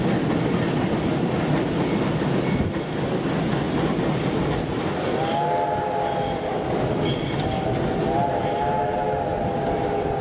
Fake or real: real